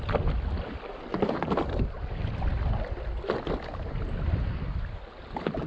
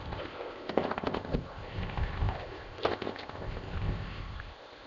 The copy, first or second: second